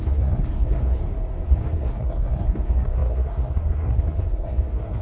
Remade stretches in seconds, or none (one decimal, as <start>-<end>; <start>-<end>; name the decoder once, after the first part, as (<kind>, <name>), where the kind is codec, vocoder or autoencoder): 0.0-0.8 (codec, SNAC); 1.5-5.0